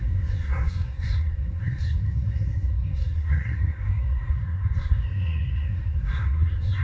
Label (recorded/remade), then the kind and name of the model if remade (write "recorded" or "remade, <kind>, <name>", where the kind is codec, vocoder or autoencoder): remade, codec, SNAC